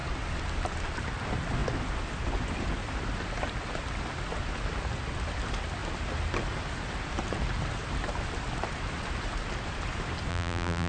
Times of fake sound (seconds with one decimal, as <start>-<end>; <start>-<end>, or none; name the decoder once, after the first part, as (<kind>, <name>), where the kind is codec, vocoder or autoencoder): 10.3-10.9 (vocoder, BigVGAN v2)